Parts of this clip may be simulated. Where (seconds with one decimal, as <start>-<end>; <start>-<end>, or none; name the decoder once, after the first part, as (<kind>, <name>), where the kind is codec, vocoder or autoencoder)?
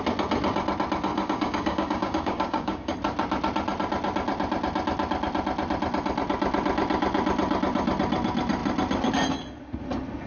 1.1-2.9 (codec, DAC)